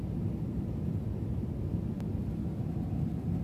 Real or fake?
real